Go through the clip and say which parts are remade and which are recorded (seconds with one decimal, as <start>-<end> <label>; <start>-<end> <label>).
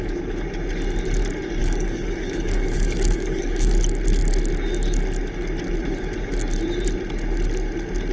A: 0.0-1.6 recorded; 1.6-3.7 remade; 3.7-8.1 recorded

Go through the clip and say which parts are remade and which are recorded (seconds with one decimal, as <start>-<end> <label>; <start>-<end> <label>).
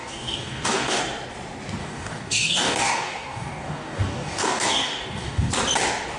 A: 0.0-1.0 remade; 1.0-1.8 recorded; 1.8-5.5 remade; 5.5-6.2 recorded